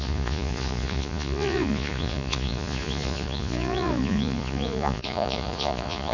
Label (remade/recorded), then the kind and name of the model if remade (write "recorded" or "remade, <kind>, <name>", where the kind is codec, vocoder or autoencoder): remade, vocoder, Vocos